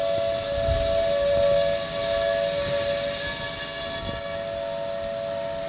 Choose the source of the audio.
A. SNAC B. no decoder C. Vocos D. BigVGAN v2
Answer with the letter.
B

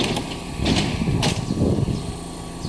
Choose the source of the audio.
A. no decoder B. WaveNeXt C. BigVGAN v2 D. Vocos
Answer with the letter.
A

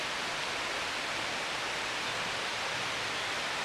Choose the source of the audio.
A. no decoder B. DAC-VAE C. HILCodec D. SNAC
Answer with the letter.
A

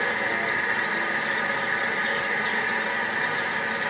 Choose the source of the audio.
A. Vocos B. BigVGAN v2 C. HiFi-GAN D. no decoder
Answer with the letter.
D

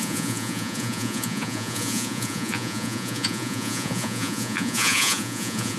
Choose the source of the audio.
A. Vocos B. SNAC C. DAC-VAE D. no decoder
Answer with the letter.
A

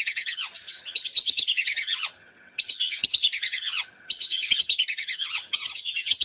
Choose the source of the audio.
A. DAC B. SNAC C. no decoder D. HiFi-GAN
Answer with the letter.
D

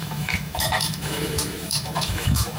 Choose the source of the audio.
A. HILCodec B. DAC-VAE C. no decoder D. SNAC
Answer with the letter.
B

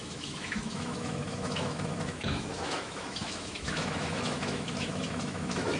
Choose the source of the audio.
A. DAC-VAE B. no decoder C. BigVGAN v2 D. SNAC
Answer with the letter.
A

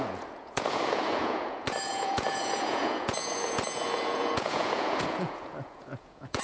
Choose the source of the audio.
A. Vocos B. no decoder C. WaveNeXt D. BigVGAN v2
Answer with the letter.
A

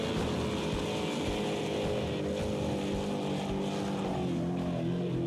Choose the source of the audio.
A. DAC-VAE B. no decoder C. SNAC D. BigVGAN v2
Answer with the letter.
B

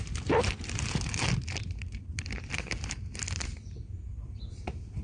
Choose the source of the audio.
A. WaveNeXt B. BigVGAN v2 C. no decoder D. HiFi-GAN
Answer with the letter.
B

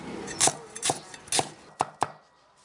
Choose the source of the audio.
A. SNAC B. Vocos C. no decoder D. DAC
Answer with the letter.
C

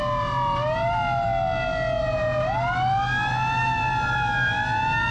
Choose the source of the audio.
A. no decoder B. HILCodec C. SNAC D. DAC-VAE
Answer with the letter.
A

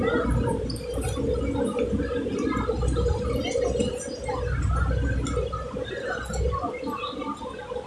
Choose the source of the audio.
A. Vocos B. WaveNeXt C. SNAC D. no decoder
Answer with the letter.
D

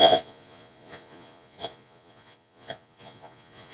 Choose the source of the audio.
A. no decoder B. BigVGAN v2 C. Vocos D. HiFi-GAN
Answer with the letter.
C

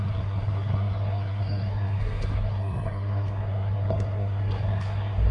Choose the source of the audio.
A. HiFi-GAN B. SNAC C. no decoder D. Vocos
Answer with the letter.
B